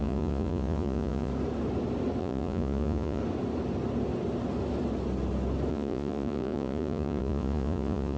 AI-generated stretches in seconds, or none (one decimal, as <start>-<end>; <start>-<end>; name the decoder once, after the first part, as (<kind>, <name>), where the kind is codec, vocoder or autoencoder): 0.0-1.3 (vocoder, Vocos); 2.2-3.2; 5.7-8.2